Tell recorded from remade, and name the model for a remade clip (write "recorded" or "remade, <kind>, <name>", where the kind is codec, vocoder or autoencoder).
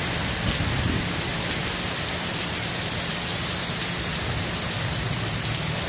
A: recorded